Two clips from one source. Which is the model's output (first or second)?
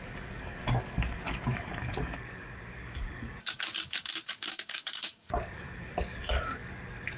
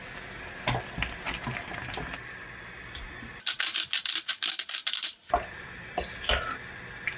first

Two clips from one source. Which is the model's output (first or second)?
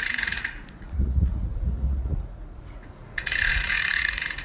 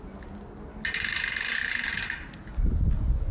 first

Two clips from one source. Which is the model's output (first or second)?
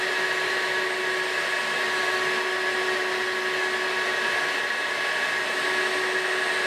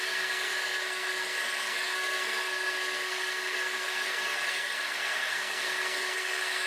second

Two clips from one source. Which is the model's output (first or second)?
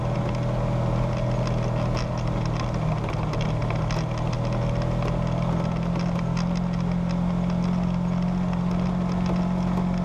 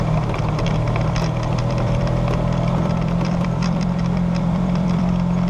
second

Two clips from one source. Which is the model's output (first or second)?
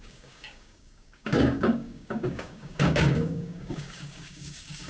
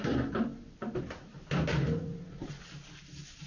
first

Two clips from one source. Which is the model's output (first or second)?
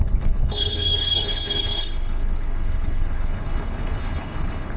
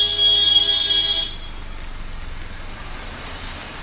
first